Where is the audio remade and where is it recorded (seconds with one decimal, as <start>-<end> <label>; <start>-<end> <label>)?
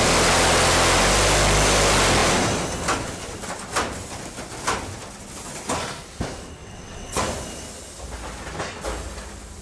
0.0-6.6 recorded; 6.6-7.2 remade; 7.2-9.6 recorded